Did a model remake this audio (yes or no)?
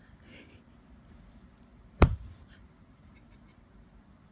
yes